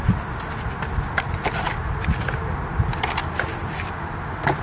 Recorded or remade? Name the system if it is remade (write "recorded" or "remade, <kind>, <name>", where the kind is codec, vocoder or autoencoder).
recorded